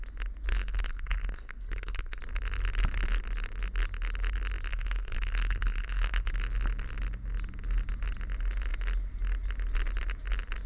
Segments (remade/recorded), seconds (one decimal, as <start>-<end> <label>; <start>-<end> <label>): 0.0-0.5 recorded; 0.5-2.2 remade; 2.2-4.7 recorded; 4.7-6.3 remade; 6.3-10.7 recorded